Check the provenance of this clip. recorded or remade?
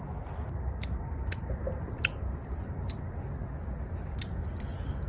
recorded